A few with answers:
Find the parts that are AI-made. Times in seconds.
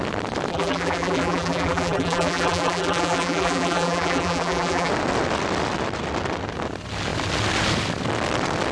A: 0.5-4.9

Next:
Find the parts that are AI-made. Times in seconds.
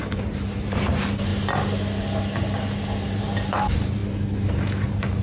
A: 0.0-1.3; 3.2-4.0; 4.5-5.2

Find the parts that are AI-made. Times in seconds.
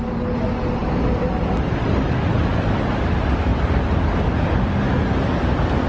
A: 0.8-1.4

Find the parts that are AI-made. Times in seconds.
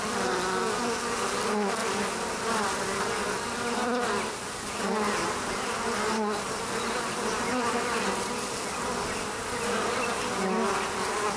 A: 1.8-3.0